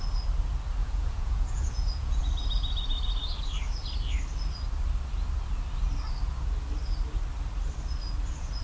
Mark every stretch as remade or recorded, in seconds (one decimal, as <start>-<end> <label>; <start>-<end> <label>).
0.0-0.8 recorded; 0.8-2.2 remade; 2.2-8.6 recorded